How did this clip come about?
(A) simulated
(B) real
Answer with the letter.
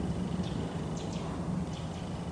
B